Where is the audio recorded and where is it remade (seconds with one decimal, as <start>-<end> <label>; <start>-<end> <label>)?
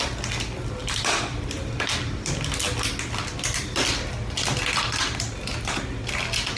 0.0-0.8 recorded; 0.8-1.9 remade; 1.9-6.6 recorded